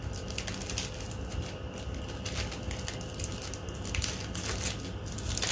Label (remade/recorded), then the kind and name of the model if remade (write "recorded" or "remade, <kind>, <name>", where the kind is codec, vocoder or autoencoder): recorded